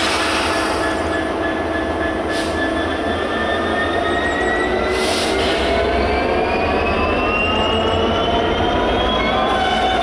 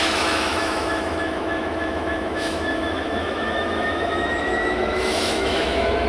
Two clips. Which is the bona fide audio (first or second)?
first